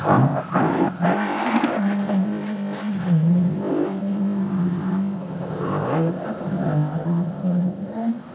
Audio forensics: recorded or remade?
remade